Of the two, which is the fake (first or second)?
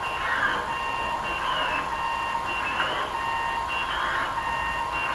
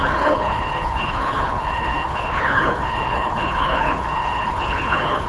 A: second